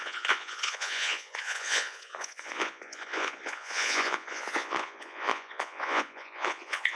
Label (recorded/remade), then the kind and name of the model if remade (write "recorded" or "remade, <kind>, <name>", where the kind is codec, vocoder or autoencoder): remade, vocoder, Vocos